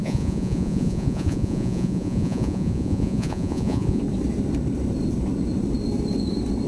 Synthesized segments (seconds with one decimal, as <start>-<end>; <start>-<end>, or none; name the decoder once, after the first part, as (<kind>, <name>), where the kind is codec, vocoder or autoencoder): 0.0-4.0 (vocoder, Vocos)